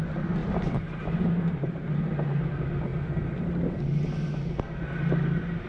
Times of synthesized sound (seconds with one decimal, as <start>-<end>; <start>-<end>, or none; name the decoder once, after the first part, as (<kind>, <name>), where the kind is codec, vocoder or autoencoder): 0.4-1.9 (vocoder, BigVGAN v2)